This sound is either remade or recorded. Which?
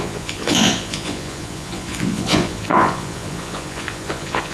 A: remade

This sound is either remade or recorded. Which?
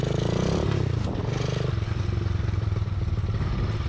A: recorded